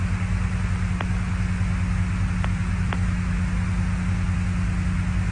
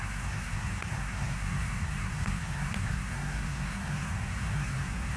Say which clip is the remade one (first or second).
second